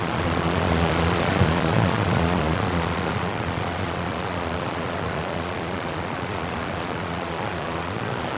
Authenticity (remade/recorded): remade